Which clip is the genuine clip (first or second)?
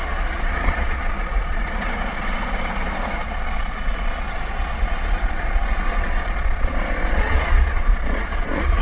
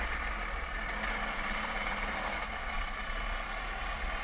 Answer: second